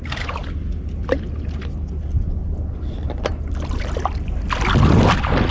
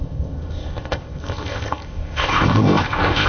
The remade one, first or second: second